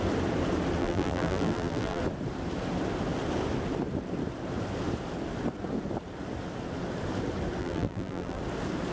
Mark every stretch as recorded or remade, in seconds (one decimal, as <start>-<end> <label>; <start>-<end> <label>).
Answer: 0.0-0.8 recorded; 0.8-2.0 remade; 2.0-7.6 recorded; 7.6-8.4 remade; 8.4-8.9 recorded

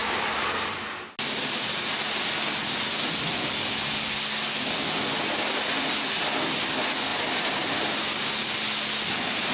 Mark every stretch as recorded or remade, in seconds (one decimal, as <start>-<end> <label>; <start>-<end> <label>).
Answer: 0.0-0.9 remade; 0.9-7.1 recorded; 7.1-7.7 remade; 7.7-9.5 recorded

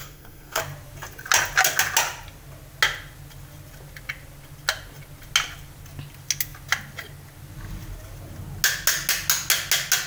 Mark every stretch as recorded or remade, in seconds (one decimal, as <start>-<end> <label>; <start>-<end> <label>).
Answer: 0.0-0.6 remade; 0.6-10.1 recorded

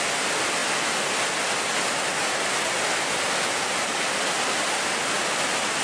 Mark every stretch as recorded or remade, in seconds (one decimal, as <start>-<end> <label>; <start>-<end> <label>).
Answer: 0.0-5.8 recorded